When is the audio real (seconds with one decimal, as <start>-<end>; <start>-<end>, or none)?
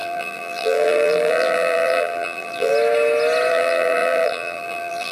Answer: 2.7-3.5